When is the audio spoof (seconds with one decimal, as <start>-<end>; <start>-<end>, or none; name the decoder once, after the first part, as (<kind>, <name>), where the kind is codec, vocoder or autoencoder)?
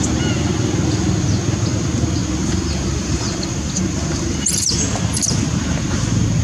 2.4-4.8 (vocoder, BigVGAN v2)